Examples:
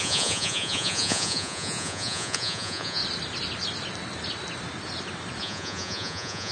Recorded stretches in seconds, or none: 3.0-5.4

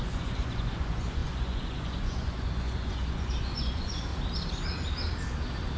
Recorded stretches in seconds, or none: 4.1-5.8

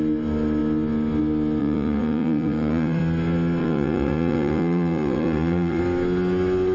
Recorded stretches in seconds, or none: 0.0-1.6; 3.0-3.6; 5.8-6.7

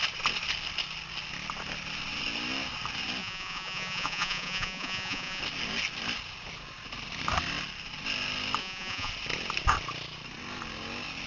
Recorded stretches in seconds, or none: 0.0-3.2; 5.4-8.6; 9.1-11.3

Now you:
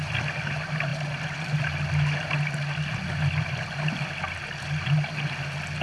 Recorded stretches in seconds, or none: 0.0-5.8